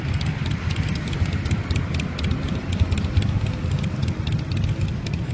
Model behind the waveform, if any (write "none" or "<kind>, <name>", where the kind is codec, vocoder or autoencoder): none